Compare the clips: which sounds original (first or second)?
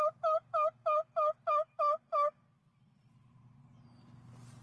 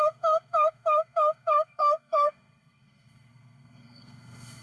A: first